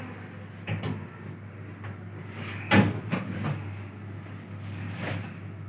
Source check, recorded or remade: recorded